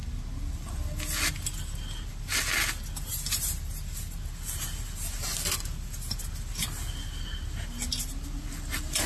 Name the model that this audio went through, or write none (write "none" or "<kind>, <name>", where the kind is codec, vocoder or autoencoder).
none